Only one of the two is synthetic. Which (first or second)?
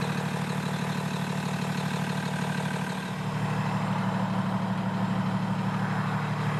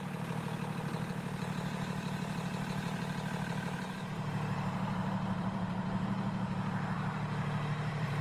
second